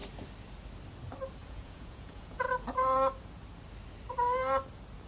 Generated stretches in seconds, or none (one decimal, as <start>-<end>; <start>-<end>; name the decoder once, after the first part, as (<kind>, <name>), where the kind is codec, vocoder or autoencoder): 1.4-2.5 (vocoder, Vocos)